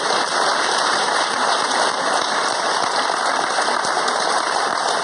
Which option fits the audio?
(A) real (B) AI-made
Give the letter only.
B